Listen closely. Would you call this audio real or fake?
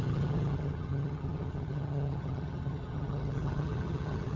fake